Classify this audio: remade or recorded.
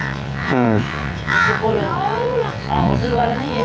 remade